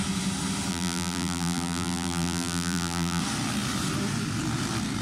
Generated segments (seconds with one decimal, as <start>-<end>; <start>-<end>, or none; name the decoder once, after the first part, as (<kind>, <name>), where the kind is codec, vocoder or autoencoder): 0.7-3.2 (vocoder, BigVGAN v2)